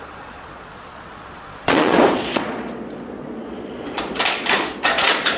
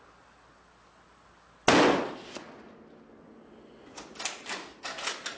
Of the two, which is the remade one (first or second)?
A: first